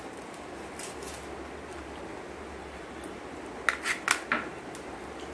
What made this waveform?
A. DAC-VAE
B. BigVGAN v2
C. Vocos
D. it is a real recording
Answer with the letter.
D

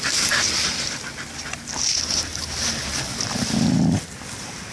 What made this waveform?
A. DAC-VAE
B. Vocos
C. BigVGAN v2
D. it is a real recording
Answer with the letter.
C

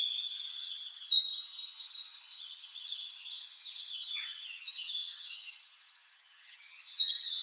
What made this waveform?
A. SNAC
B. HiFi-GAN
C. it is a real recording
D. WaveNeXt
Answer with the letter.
B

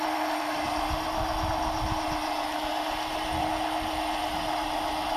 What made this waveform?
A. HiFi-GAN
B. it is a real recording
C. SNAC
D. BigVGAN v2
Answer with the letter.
B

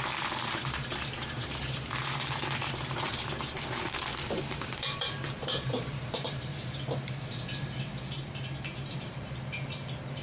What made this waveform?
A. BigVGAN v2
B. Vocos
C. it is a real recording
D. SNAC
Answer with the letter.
A